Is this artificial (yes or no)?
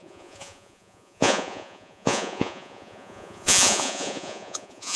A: yes